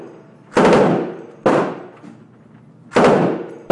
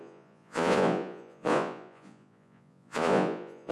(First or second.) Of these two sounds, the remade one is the second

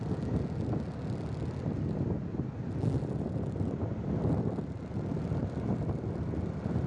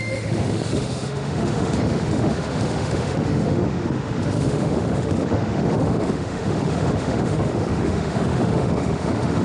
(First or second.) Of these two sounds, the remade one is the second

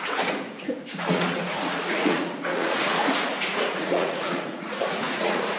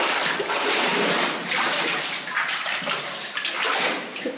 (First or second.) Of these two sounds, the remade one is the first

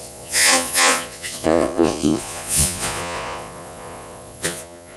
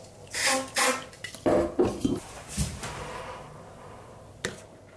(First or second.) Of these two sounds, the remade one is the first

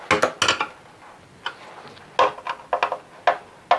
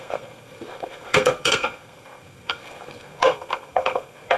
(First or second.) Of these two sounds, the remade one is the second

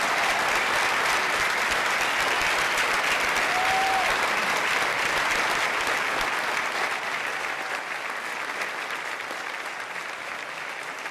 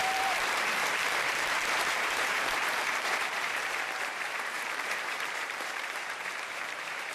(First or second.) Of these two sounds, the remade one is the second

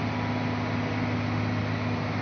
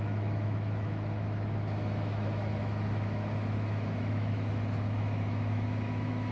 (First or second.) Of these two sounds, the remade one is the second